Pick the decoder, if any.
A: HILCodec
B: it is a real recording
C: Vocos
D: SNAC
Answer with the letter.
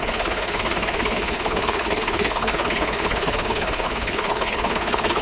A